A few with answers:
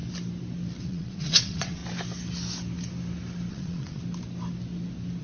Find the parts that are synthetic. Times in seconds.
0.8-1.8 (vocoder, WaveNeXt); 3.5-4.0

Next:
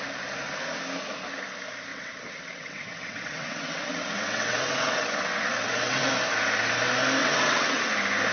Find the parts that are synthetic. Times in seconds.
1.9-6.1 (vocoder, WaveNeXt); 7.2-7.8

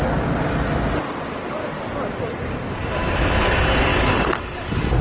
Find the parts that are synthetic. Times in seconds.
none

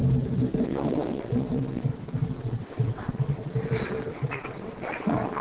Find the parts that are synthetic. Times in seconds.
0.7-1.9 (vocoder, WaveNeXt); 2.4-3.5; 4.1-5.4